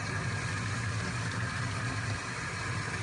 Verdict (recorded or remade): recorded